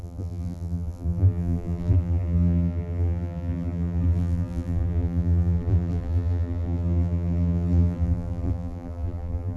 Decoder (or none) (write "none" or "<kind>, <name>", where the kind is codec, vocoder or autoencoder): vocoder, BigVGAN v2